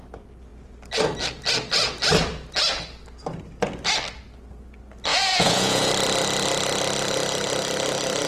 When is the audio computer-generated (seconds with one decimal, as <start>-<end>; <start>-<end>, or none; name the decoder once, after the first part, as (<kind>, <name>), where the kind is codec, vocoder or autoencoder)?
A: 5.1-5.9 (vocoder, Vocos)

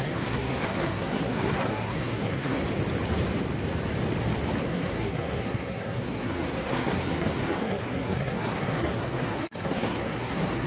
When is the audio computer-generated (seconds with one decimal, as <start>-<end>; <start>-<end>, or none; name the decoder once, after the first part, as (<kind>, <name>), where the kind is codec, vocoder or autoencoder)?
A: 0.0-2.6 (codec, SNAC); 4.6-10.7

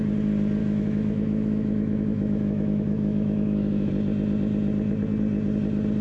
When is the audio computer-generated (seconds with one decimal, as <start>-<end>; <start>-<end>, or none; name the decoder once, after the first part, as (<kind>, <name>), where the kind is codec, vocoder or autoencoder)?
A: 0.6-3.9 (autoencoder, DAC-VAE)

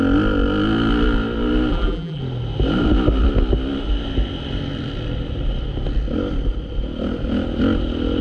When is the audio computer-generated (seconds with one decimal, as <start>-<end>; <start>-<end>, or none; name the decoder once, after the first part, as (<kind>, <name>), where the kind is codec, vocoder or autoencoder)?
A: 1.7-2.2 (vocoder, BigVGAN v2)

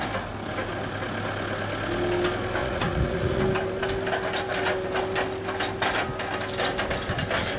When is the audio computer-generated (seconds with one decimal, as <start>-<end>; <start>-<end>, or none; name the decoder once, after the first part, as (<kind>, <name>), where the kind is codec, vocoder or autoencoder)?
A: 2.6-3.4 (vocoder, Vocos)

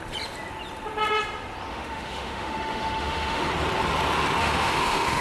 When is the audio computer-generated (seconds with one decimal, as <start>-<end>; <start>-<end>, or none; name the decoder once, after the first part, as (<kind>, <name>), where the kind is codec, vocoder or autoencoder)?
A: 1.7-3.5 (autoencoder, DAC-VAE); 4.4-5.2